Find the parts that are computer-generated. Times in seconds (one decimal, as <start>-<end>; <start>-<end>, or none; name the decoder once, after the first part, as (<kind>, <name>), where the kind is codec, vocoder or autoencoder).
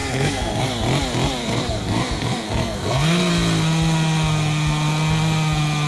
0.0-0.6 (codec, SNAC); 1.4-3.3